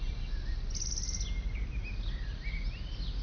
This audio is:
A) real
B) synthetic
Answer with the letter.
A